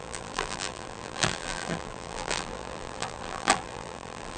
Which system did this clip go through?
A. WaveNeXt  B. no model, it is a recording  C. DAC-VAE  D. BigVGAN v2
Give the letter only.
D